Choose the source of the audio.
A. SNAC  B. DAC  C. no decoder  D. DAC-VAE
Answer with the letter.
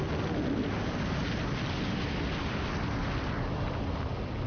C